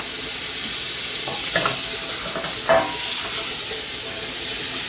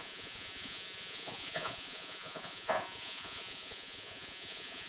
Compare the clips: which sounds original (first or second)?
first